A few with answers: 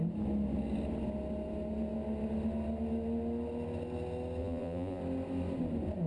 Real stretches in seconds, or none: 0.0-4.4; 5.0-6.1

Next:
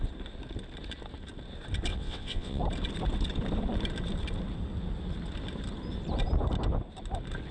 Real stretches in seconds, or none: 0.0-1.9; 2.6-7.5

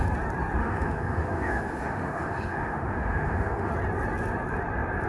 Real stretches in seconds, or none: 0.0-0.6; 3.7-5.1

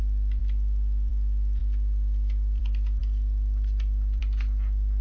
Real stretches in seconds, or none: 0.0-0.4; 1.1-3.0; 4.2-5.0

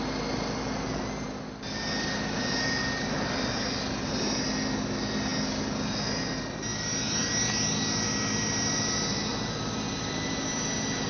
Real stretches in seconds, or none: 0.0-11.1

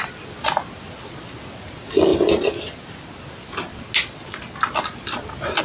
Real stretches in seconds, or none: 0.0-5.6

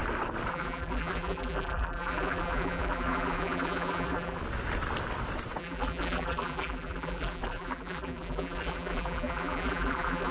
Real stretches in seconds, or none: 0.0-0.5; 4.4-5.6

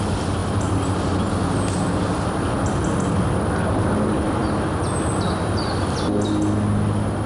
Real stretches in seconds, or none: 0.0-7.3